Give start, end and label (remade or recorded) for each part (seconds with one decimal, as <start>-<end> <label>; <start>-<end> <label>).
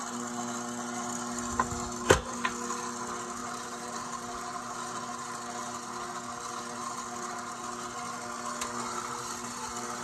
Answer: 0.0-3.4 recorded; 3.4-5.0 remade; 5.0-10.0 recorded